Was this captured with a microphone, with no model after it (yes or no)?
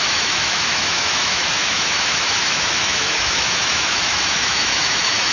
no